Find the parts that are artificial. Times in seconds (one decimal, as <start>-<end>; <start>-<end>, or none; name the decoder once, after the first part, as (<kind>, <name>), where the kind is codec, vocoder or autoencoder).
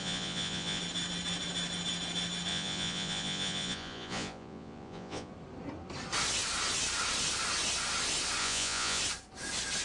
0.0-0.8 (vocoder, Vocos); 2.5-5.3; 8.4-9.0